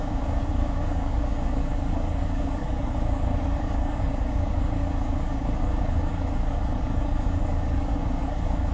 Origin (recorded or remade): remade